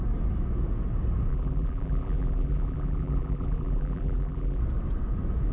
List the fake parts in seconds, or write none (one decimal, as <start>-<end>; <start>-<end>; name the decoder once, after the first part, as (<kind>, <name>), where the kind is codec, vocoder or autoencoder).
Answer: 1.3-4.6 (vocoder, BigVGAN v2)